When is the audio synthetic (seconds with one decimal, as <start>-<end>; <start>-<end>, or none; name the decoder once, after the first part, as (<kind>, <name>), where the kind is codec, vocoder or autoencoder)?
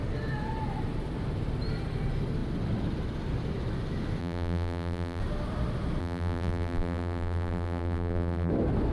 4.2-5.2 (vocoder, BigVGAN v2); 6.0-8.5